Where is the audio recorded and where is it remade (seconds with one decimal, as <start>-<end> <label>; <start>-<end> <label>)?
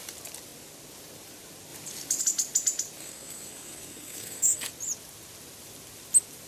0.0-3.0 recorded; 3.0-4.7 remade; 4.7-6.5 recorded